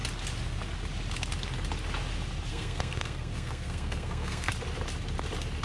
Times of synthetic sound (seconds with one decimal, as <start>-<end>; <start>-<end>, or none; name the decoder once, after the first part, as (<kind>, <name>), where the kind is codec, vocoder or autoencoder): 2.5-4.5 (codec, SNAC)